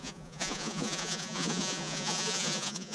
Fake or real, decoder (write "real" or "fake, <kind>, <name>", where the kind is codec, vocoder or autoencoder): fake, vocoder, Vocos